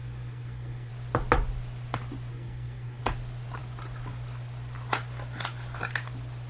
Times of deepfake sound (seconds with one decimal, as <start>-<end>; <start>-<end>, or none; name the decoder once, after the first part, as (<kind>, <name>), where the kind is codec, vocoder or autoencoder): 0.0-0.9 (codec, SNAC); 2.3-3.0